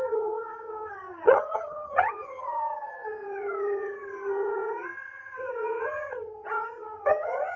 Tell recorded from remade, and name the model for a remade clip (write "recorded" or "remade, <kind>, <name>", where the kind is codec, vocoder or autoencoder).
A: remade, vocoder, HiFi-GAN